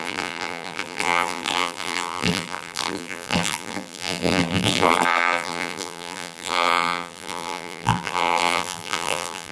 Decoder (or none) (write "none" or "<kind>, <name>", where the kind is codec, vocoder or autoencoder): vocoder, BigVGAN v2